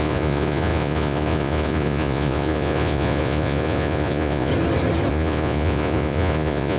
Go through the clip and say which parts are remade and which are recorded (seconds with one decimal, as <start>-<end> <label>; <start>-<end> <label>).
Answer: 0.0-4.5 remade; 4.5-5.1 recorded; 5.1-6.8 remade